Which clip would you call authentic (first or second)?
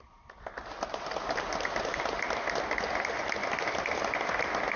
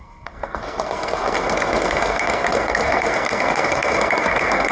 first